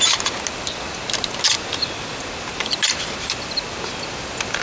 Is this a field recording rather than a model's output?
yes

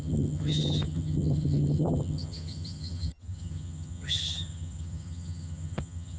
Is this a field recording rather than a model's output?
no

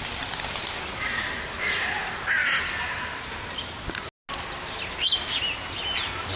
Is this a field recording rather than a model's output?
yes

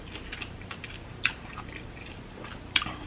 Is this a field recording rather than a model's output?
yes